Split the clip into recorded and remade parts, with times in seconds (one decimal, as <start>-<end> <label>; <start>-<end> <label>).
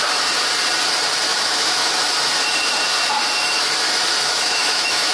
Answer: 0.0-1.3 recorded; 1.3-2.0 remade; 2.0-4.3 recorded; 4.3-5.1 remade